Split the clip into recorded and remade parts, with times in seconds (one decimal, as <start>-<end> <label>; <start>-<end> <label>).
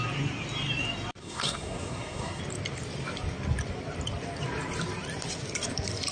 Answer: 0.0-1.2 recorded; 1.2-2.4 remade; 2.4-6.1 recorded